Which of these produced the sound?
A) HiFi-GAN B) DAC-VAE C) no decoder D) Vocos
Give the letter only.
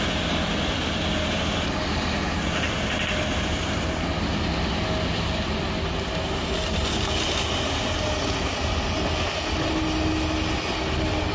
C